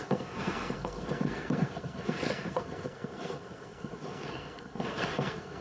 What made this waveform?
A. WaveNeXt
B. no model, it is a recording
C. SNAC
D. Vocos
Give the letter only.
C